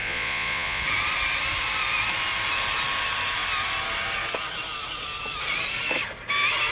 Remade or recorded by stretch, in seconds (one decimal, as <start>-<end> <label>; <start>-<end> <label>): 0.0-0.8 remade; 0.8-6.7 recorded